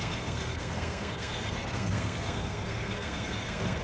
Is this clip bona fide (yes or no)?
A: no